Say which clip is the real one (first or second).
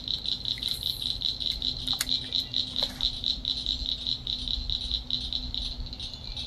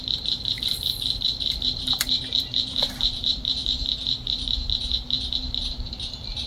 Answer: first